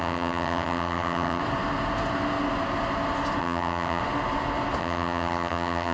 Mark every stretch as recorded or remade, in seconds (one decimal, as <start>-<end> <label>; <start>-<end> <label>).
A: 0.0-1.4 remade; 1.4-3.4 recorded; 3.4-4.0 remade; 4.0-4.8 recorded; 4.8-5.9 remade